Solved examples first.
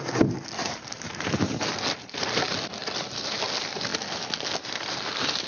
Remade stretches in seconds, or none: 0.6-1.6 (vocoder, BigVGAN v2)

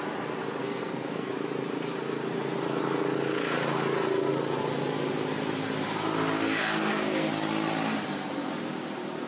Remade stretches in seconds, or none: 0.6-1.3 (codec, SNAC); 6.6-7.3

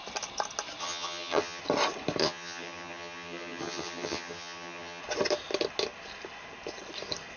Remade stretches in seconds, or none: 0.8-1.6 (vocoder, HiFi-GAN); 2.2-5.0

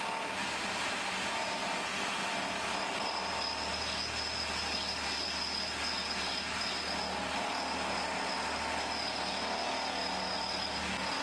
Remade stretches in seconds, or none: none

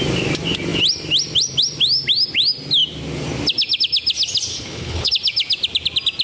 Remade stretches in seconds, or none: 4.5-5.1 (codec, HILCodec)

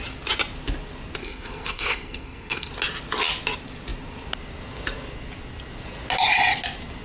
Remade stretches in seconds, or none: 1.2-2.7 (codec, SNAC)